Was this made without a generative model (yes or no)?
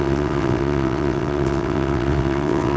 no